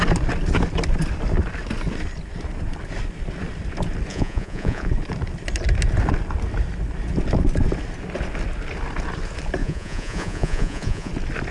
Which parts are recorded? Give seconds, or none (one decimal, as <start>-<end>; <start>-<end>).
0.0-4.1; 4.9-9.6; 11.1-11.5